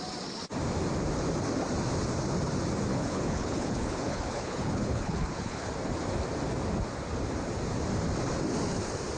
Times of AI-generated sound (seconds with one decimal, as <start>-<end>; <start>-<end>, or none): 2.9-5.7